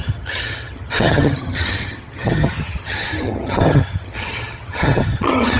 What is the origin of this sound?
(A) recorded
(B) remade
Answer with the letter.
B